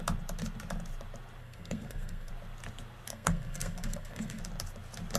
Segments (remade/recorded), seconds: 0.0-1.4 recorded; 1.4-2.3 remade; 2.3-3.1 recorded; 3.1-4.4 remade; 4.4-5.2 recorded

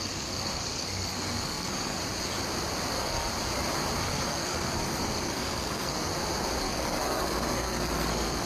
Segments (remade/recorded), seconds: 0.0-2.0 remade; 2.0-2.9 recorded; 2.9-3.3 remade; 3.3-4.0 recorded; 4.0-6.1 remade; 6.1-6.6 recorded; 6.6-8.5 remade

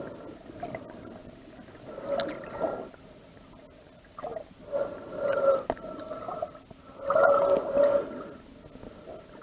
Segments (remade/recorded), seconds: 0.0-9.4 recorded

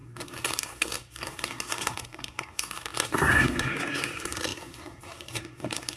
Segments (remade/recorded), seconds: 0.0-6.0 remade

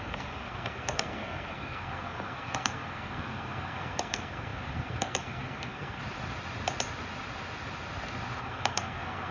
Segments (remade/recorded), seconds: 0.0-6.0 remade; 6.0-8.4 recorded; 8.4-9.3 remade